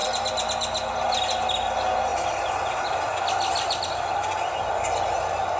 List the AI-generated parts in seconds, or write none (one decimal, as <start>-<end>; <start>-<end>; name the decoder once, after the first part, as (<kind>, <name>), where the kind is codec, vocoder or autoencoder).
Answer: 0.0-1.1 (vocoder, BigVGAN v2); 2.1-3.8